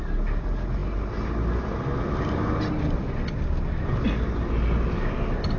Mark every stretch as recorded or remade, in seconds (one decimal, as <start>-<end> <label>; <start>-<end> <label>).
0.0-5.6 recorded